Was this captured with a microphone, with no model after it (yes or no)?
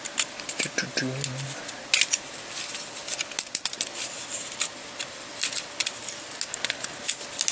yes